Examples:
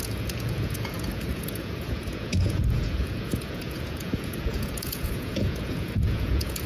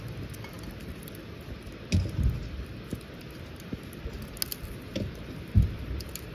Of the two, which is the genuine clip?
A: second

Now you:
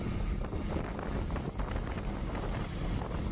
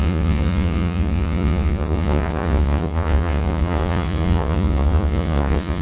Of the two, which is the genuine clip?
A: first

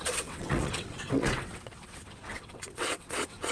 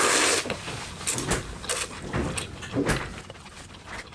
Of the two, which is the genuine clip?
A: second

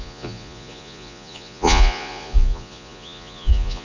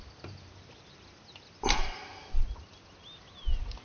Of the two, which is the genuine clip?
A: second